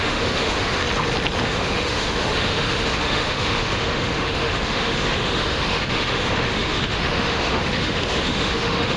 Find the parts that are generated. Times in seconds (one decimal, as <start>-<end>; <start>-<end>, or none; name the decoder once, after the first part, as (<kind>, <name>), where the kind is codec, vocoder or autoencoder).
0.0-0.8 (autoencoder, DAC-VAE); 1.4-9.0